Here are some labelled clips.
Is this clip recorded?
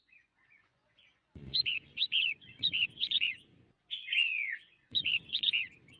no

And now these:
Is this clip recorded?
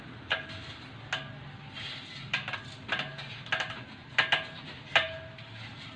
yes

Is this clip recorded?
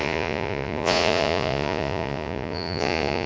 no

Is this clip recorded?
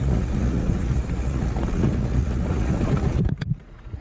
no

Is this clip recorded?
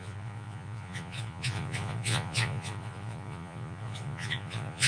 no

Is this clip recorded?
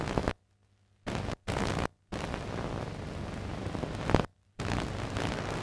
yes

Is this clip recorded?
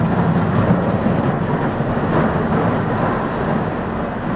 yes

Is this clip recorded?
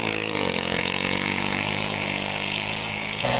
no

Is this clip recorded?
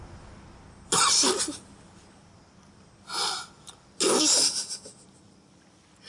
yes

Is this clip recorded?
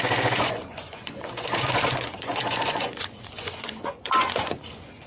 no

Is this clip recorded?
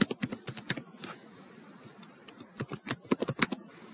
yes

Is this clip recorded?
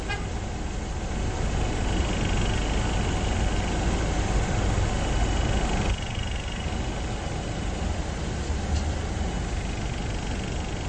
yes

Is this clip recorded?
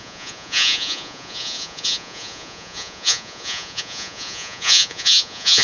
no